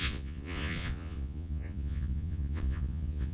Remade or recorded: remade